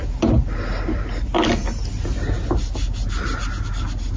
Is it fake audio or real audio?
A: real